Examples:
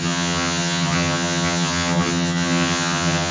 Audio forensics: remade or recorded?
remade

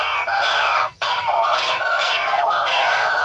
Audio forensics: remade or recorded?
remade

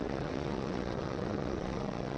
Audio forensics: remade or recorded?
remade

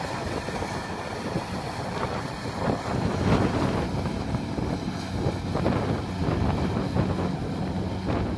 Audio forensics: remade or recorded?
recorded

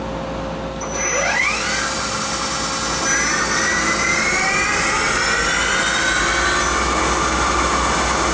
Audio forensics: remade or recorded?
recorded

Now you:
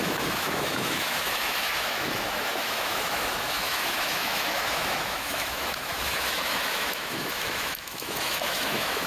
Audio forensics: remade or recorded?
remade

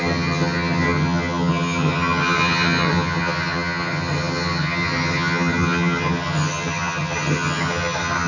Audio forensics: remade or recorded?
remade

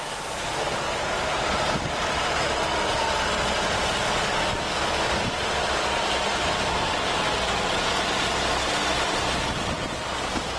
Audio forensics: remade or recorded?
recorded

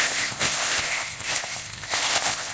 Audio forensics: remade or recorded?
remade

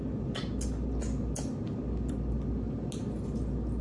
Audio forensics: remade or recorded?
recorded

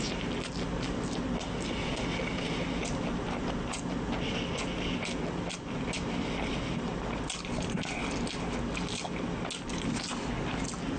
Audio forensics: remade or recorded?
recorded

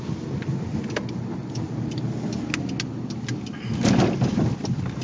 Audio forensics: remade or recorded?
recorded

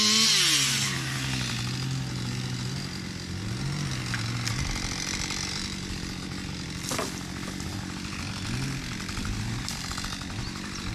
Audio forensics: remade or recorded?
recorded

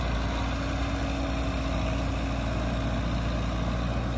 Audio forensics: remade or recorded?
recorded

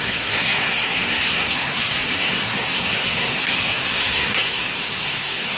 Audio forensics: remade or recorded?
remade